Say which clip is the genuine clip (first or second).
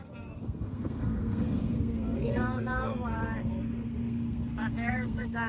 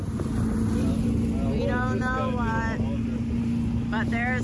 second